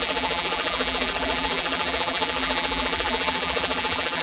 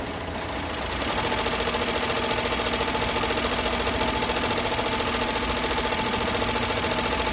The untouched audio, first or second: second